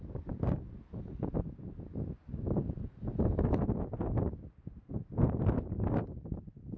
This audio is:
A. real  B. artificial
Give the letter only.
A